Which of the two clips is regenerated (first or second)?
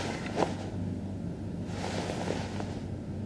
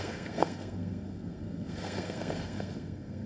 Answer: second